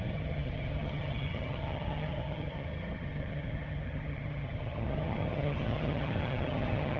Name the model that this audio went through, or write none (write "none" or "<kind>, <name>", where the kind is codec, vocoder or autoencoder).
vocoder, HiFi-GAN